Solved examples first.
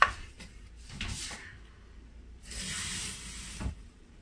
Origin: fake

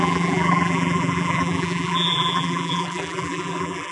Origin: fake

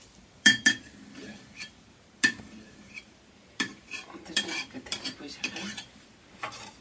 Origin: fake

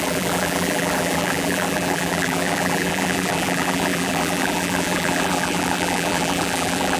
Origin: fake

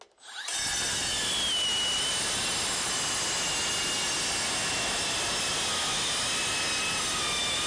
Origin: real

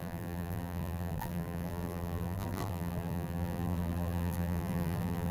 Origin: fake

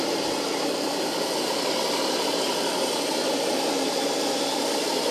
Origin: fake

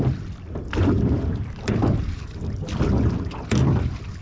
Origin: fake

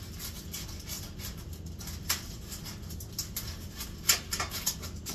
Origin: real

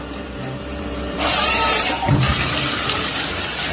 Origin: fake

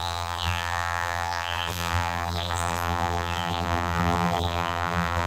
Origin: fake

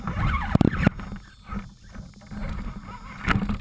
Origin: real